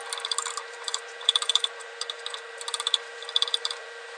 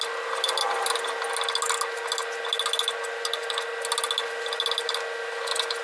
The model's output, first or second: first